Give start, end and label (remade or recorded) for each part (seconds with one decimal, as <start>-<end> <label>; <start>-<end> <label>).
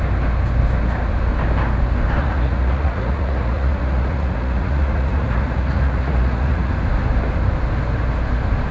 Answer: 0.0-2.2 recorded; 2.2-6.7 remade; 6.7-8.7 recorded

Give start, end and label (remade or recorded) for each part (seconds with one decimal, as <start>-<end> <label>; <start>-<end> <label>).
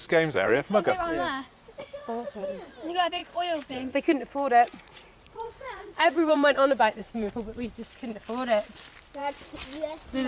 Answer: 0.0-0.9 remade; 0.9-1.5 recorded; 1.5-2.4 remade; 2.4-3.2 recorded; 3.2-7.3 remade; 7.3-10.3 recorded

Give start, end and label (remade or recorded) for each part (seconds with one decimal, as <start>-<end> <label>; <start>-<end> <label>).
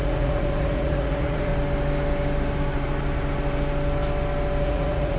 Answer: 0.0-1.5 remade; 1.5-4.6 recorded; 4.6-5.2 remade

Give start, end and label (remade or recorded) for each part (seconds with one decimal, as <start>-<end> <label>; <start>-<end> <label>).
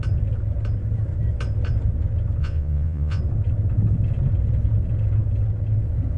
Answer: 0.0-2.4 recorded; 2.4-3.2 remade; 3.2-6.2 recorded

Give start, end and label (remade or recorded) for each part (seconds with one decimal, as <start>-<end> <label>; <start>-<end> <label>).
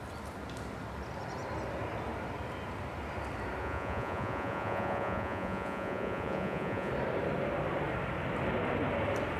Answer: 0.0-3.6 recorded; 3.6-6.9 remade; 6.9-9.4 recorded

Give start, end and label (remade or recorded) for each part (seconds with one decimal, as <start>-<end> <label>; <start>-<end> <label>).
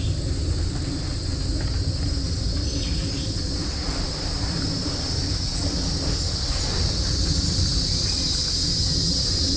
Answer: 0.0-9.6 recorded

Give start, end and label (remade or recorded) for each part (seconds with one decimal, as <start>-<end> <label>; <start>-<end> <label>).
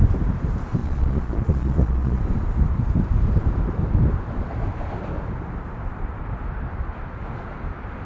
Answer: 0.0-0.8 recorded; 0.8-2.2 remade; 2.2-8.1 recorded